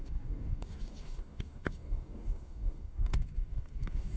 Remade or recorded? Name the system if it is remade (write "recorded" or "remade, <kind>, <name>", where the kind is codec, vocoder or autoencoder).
remade, codec, DAC